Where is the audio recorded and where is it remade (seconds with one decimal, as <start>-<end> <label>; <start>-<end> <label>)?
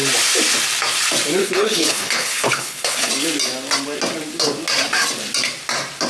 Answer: 0.0-1.4 recorded; 1.4-3.1 remade; 3.1-6.1 recorded